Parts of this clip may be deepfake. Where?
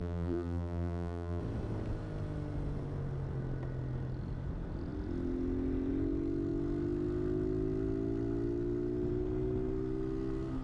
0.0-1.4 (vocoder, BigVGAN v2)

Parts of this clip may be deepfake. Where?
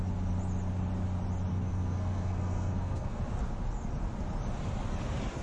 1.5-3.2 (codec, SNAC)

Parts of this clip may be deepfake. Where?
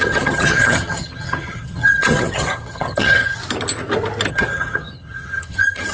0.0-3.4 (vocoder, HiFi-GAN); 4.3-5.9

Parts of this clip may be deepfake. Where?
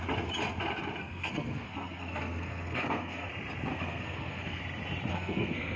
1.0-3.3 (codec, SNAC); 3.7-4.6; 5.1-5.8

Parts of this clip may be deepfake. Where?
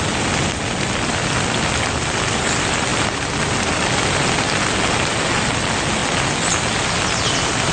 none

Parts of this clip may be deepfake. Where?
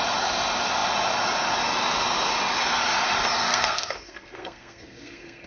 3.5-5.5 (codec, SNAC)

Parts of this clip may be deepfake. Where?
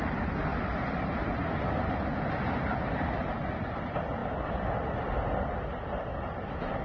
none